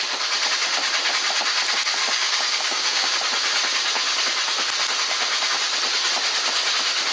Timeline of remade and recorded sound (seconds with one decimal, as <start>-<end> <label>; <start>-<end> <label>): 0.0-2.0 recorded; 2.0-3.1 remade; 3.1-7.1 recorded